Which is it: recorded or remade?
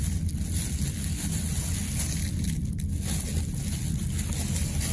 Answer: recorded